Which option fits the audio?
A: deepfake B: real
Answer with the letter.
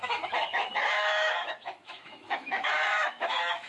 A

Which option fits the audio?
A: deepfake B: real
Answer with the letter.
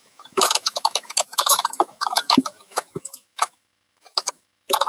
A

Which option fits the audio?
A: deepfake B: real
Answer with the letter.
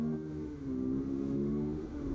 A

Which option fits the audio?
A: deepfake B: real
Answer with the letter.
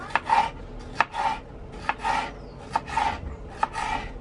B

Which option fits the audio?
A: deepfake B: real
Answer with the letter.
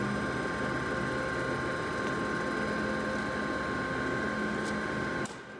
B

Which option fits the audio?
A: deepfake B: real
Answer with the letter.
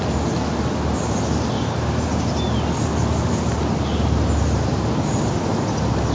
B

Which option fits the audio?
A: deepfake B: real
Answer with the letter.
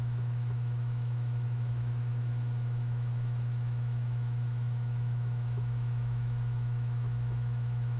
A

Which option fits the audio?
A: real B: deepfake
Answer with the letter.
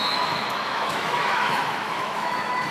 B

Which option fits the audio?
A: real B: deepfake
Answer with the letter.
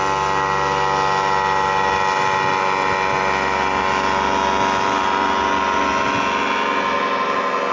A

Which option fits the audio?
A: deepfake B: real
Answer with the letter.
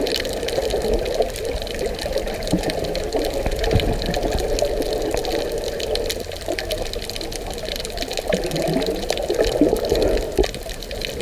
B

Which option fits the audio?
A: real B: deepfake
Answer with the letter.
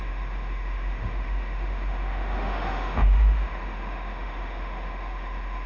B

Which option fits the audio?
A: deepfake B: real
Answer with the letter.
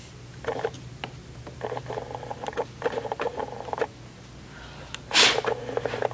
B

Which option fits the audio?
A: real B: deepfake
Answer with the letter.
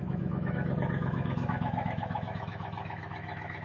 B